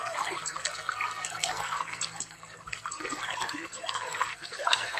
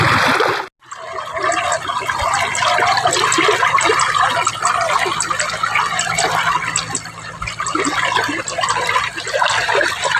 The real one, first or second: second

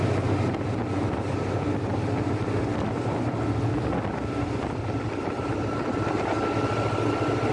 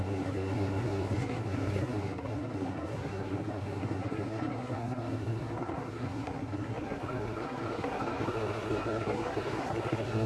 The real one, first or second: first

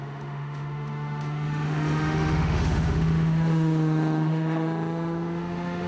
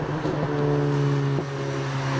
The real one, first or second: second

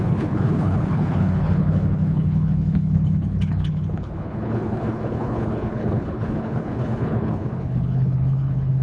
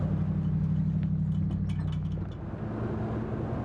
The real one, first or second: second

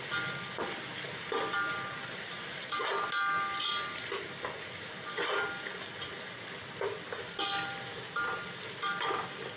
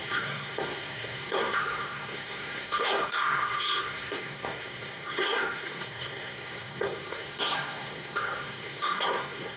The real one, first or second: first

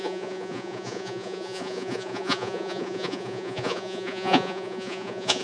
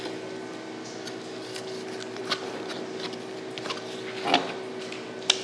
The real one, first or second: second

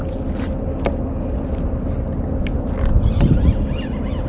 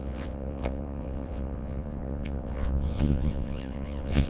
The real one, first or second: first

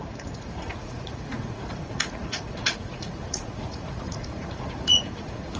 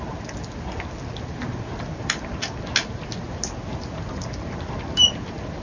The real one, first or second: second